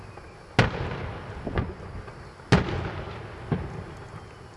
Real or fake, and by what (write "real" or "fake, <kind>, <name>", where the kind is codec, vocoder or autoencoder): real